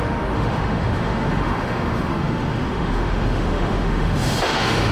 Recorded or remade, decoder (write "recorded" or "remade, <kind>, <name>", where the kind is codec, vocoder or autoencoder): remade, autoencoder, DAC-VAE